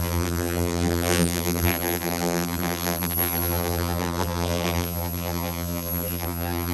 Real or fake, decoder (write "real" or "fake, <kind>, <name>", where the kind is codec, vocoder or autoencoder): fake, vocoder, BigVGAN v2